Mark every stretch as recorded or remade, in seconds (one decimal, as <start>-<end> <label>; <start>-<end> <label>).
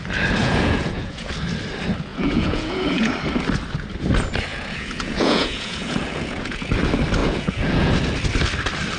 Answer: 0.0-0.4 recorded; 0.4-1.3 remade; 1.3-2.1 recorded; 2.1-3.1 remade; 3.1-4.5 recorded; 4.5-6.7 remade; 6.7-7.2 recorded; 7.2-7.9 remade; 7.9-9.0 recorded